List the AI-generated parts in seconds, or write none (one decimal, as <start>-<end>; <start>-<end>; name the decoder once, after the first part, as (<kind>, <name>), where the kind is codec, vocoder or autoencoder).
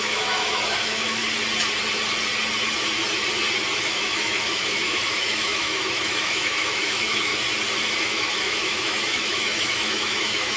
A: 0.0-1.2 (autoencoder, DAC-VAE); 3.8-7.3; 7.8-10.6